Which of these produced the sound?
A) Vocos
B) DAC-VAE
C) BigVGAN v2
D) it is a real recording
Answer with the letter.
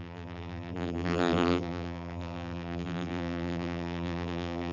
C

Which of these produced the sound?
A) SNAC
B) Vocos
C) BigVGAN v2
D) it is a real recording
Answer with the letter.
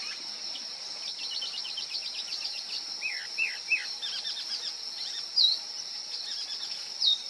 D